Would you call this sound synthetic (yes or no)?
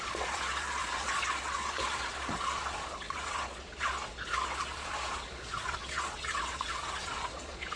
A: yes